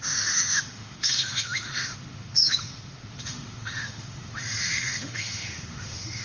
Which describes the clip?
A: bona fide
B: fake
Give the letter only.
B